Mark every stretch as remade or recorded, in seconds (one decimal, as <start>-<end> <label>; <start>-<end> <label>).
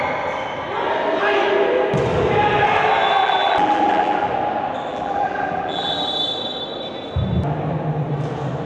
0.0-3.2 recorded; 3.2-4.3 remade; 4.3-4.9 recorded; 4.9-6.1 remade; 6.1-8.7 recorded